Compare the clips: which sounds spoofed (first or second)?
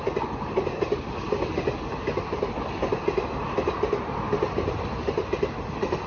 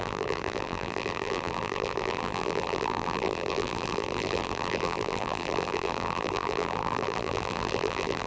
second